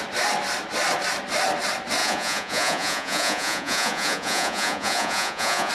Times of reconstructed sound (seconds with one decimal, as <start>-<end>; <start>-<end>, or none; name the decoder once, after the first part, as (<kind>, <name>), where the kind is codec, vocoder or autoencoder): 2.0-5.7 (vocoder, Vocos)

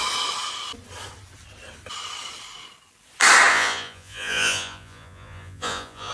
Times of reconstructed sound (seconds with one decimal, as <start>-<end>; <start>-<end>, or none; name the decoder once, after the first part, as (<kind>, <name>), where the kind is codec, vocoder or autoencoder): 3.5-6.1 (vocoder, Vocos)

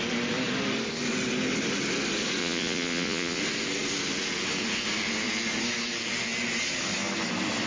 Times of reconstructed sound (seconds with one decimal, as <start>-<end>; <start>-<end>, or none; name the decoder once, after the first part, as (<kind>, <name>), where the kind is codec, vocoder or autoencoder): 2.4-3.4 (vocoder, Vocos)

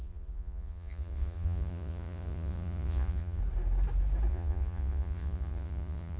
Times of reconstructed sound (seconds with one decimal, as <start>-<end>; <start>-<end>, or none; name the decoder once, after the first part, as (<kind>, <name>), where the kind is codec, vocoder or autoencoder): 0.0-3.4 (vocoder, Vocos); 4.3-6.2

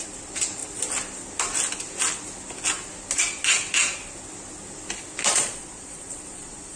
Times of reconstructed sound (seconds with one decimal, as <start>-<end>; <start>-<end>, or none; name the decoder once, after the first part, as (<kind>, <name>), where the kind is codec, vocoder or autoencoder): 5.3-6.8 (vocoder, Vocos)

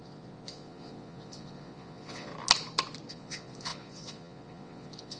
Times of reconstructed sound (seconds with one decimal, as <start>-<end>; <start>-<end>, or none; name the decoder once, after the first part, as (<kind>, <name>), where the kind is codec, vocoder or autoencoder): 0.0-2.3 (vocoder, Vocos); 3.1-5.2

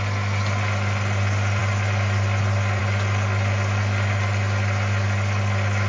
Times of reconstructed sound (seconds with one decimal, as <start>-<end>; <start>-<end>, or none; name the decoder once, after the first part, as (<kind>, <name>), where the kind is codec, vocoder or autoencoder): none